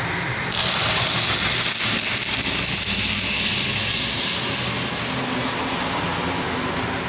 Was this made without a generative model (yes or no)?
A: yes